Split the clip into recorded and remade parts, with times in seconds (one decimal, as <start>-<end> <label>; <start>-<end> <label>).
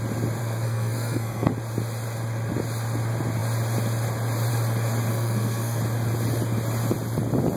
0.0-0.4 recorded; 0.4-1.5 remade; 1.5-5.1 recorded; 5.1-5.8 remade; 5.8-7.6 recorded